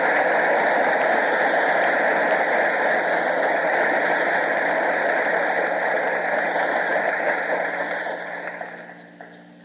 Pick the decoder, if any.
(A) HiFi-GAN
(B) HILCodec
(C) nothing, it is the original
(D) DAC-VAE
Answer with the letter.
C